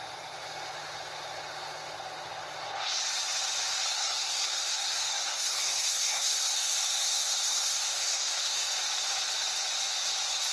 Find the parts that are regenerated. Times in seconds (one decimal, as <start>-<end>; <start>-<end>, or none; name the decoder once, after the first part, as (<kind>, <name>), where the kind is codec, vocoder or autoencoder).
3.8-8.7 (codec, SNAC)